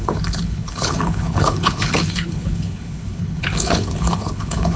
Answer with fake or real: fake